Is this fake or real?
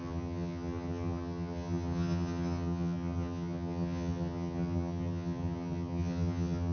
fake